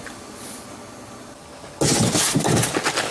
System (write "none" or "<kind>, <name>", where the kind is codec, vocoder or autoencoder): none